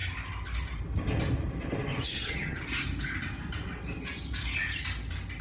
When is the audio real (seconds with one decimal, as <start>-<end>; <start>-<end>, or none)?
0.0-2.0; 2.6-5.4

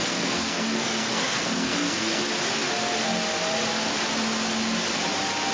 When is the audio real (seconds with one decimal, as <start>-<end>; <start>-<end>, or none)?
2.2-5.5

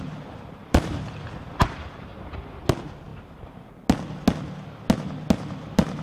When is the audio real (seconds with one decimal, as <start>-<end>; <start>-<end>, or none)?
0.0-0.6; 1.2-1.6; 2.6-3.1; 3.7-6.0